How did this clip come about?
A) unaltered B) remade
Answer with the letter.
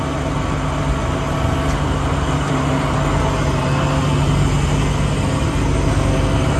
A